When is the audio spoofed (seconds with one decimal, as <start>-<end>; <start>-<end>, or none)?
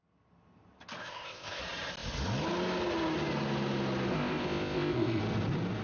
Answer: 1.0-1.6; 4.1-5.2